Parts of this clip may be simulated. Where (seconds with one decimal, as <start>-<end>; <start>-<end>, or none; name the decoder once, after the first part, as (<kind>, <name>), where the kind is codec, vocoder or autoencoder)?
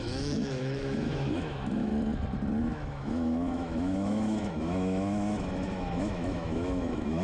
0.0-1.9 (autoencoder, DAC-VAE); 2.6-7.2